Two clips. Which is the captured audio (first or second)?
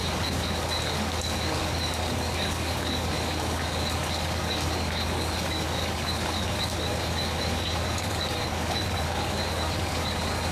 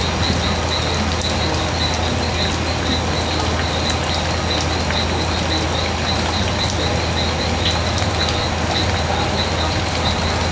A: second